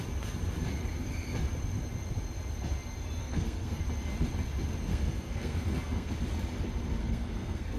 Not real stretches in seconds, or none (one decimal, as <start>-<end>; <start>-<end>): 3.2-3.8; 4.9-6.1; 7.0-7.8